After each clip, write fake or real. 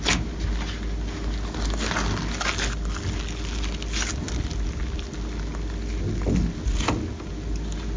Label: real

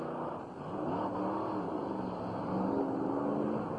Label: real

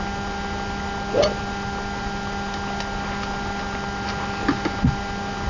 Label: real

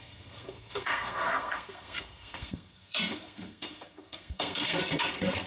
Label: fake